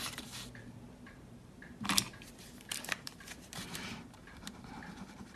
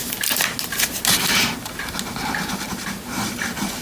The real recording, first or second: second